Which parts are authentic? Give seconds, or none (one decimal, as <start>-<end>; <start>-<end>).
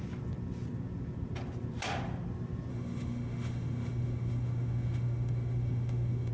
0.0-2.7